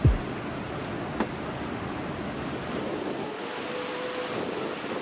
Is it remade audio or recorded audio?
recorded